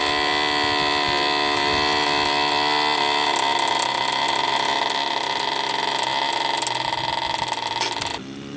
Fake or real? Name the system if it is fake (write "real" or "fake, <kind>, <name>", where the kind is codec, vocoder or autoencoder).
real